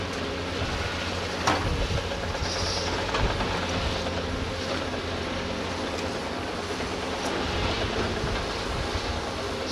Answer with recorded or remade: recorded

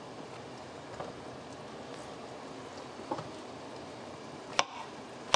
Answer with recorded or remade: recorded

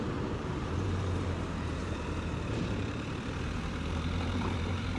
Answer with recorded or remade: remade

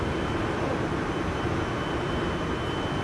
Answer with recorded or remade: remade